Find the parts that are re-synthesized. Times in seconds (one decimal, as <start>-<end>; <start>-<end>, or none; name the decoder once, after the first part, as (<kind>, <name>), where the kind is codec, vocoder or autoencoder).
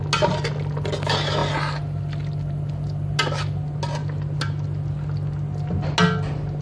none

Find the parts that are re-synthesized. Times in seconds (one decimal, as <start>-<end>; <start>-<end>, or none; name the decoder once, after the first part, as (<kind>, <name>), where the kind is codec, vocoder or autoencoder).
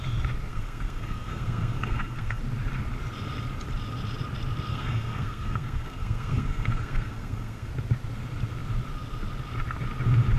0.5-2.4 (codec, SNAC); 4.7-7.7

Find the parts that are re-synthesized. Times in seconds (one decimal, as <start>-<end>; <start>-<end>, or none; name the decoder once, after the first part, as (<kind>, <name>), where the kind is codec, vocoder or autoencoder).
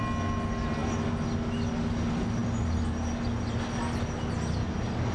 none